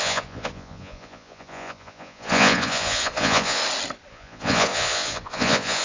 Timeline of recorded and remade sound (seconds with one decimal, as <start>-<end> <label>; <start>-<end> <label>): 0.0-3.6 remade; 3.6-4.1 recorded; 4.1-5.8 remade